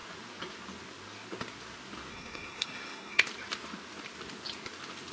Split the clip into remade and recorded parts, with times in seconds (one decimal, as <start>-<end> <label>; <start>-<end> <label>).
0.0-2.1 recorded; 2.1-3.2 remade; 3.2-5.1 recorded

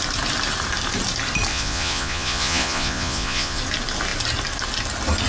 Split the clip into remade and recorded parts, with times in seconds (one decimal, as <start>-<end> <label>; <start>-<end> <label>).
0.0-1.5 recorded; 1.5-3.6 remade; 3.6-5.3 recorded

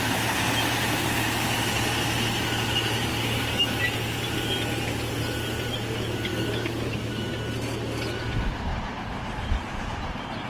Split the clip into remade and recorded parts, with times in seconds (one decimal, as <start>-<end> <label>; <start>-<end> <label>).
0.0-3.1 recorded; 3.1-3.8 remade; 3.8-6.3 recorded; 6.3-7.3 remade; 7.3-10.5 recorded

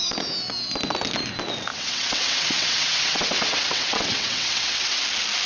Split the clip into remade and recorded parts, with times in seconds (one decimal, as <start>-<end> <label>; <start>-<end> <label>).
0.0-1.7 recorded; 1.7-5.0 remade; 5.0-5.5 recorded

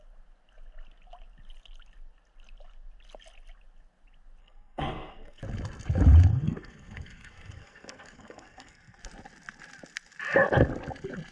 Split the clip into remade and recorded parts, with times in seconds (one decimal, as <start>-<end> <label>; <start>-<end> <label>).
0.0-4.4 recorded; 4.4-5.4 remade; 5.4-6.3 recorded; 6.3-9.0 remade; 9.0-11.3 recorded

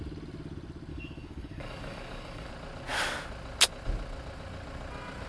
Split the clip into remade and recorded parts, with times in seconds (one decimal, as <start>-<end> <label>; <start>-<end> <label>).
0.0-0.9 recorded; 0.9-2.5 remade; 2.5-5.3 recorded

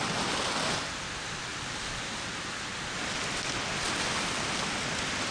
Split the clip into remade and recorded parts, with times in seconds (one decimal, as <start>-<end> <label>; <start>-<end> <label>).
0.0-5.3 recorded

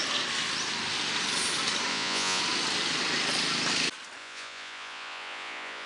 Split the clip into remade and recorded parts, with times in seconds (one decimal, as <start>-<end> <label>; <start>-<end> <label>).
0.0-1.9 recorded; 1.9-2.4 remade; 2.4-4.2 recorded; 4.2-5.9 remade